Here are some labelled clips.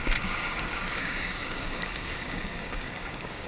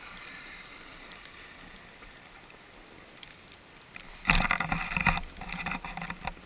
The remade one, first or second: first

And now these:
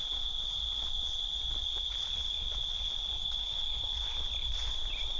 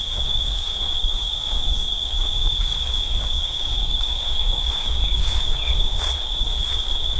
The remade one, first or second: second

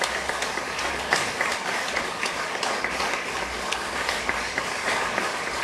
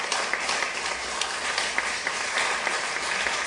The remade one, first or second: first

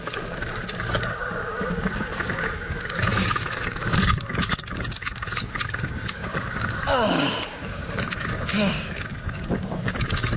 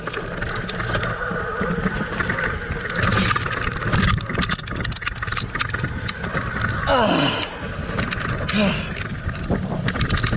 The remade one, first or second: first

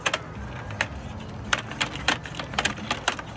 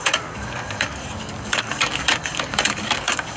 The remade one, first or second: second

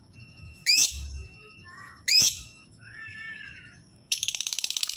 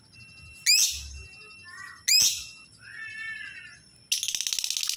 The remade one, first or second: first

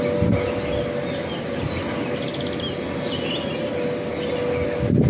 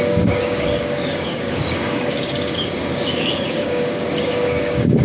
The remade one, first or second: second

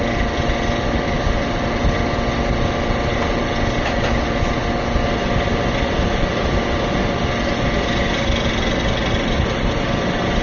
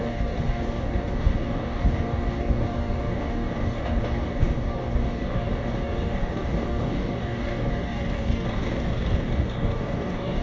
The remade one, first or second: second